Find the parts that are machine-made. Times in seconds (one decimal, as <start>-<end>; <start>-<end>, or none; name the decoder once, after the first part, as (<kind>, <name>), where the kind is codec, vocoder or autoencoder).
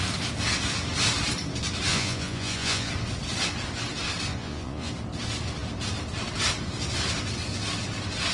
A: 1.9-2.9 (vocoder, Vocos); 4.3-4.9